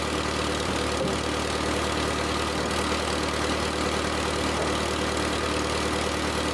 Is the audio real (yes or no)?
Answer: yes